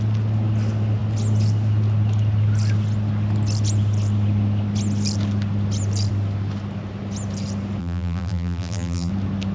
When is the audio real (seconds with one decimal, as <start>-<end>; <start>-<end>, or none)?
0.0-7.8; 9.1-9.5

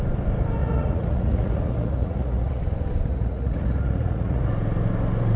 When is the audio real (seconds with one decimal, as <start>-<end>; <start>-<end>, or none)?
0.0-0.6; 2.6-3.1; 4.5-5.4

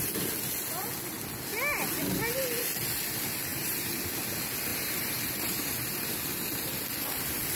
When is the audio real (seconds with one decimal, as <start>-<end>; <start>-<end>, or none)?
0.0-3.5; 4.0-4.7; 6.1-7.6

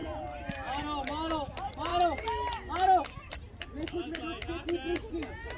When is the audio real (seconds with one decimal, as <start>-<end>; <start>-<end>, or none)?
0.0-5.6